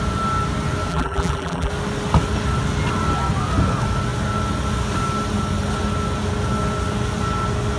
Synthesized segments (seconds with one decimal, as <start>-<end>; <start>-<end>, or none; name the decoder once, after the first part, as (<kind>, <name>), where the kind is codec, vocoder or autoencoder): 0.9-1.7 (vocoder, BigVGAN v2)